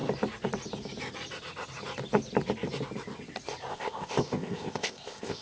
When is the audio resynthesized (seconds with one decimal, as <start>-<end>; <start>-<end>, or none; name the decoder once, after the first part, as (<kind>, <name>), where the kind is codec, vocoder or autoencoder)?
3.7-5.4 (codec, ZipCodec)